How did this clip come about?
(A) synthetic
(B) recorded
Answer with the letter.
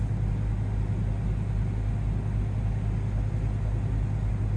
B